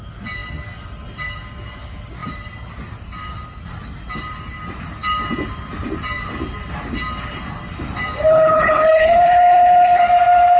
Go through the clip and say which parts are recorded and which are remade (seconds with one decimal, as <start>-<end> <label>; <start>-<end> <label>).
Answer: 0.0-8.3 recorded; 8.3-10.0 remade; 10.0-10.6 recorded